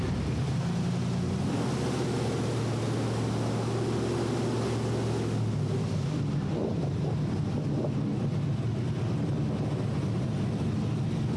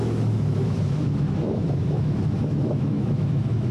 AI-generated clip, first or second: second